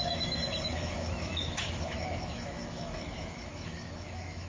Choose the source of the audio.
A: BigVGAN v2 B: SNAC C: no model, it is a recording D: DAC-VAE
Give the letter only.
D